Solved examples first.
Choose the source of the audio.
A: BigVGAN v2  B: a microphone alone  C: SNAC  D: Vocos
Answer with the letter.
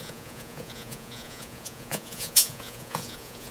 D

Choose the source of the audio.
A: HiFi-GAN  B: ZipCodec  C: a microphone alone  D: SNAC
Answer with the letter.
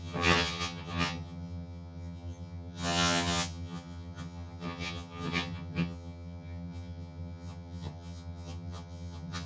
A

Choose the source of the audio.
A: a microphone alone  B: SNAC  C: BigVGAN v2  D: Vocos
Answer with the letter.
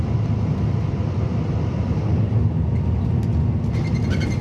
A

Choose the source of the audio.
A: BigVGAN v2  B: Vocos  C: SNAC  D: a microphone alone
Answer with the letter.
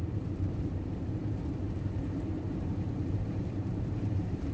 A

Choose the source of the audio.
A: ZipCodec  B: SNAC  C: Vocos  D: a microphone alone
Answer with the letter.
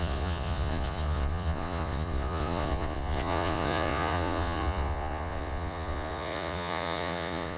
C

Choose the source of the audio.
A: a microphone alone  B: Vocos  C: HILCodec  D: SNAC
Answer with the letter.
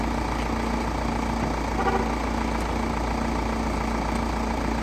A